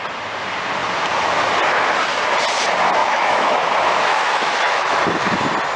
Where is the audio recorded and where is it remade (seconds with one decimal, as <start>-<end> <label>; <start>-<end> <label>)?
0.0-3.0 recorded; 3.0-3.6 remade; 3.6-4.1 recorded; 4.1-5.0 remade; 5.0-5.8 recorded